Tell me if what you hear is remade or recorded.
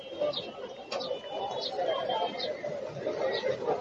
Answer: recorded